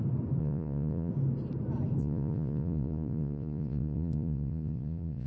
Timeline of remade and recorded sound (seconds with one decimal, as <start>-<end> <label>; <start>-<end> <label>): 0.0-0.4 recorded; 0.4-1.1 remade; 1.1-2.0 recorded; 2.0-5.3 remade